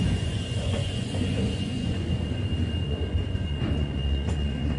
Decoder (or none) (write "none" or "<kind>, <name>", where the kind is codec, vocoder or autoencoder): vocoder, Vocos